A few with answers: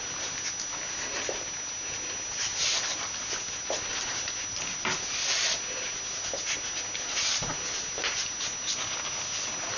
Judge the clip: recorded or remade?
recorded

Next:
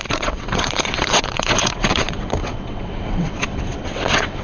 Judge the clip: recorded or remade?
remade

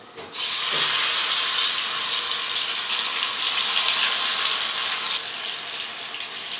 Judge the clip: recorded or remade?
recorded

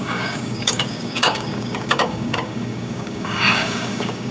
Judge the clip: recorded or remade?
remade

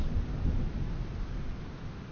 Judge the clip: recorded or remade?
recorded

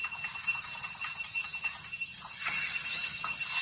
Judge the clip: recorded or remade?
recorded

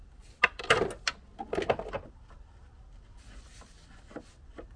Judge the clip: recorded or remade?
recorded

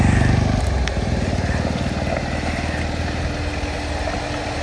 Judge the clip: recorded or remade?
recorded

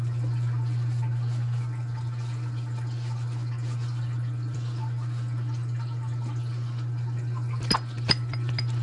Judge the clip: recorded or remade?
recorded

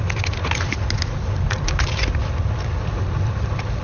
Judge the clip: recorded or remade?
recorded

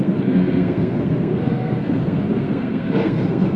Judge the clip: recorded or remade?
remade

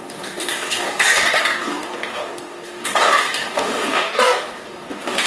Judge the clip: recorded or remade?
remade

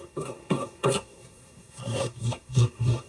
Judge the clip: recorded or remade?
remade